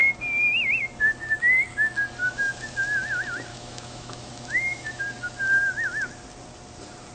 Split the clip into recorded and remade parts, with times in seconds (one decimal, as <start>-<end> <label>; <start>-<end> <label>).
0.0-2.2 recorded; 2.2-2.7 remade; 2.7-3.5 recorded; 3.5-5.0 remade; 5.0-7.1 recorded